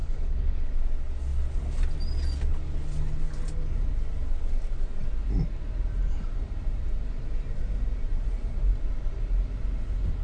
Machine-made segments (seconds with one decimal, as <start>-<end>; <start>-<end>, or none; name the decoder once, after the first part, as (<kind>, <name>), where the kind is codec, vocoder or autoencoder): 0.0-0.7 (codec, HILCodec)